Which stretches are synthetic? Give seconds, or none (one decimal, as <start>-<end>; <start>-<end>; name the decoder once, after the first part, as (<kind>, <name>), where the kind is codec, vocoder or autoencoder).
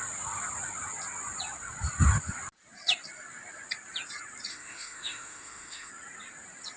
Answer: 4.5-5.9 (autoencoder, DAC-VAE)